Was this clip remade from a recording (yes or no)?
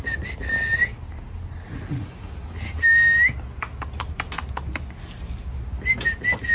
no